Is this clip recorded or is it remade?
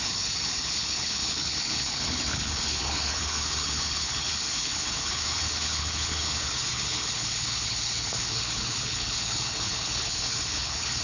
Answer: remade